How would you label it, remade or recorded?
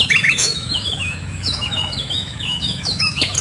remade